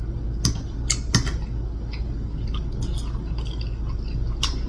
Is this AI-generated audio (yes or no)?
no